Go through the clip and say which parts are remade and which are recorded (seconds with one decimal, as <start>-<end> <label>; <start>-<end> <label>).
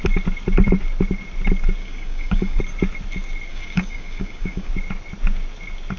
0.0-1.8 recorded; 1.8-2.6 remade; 2.6-3.5 recorded; 3.5-4.7 remade; 4.7-6.0 recorded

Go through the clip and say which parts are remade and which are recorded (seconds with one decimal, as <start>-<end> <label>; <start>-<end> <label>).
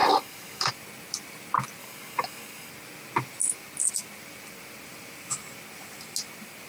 0.0-0.7 remade; 0.7-1.8 recorded; 1.8-2.7 remade; 2.7-6.7 recorded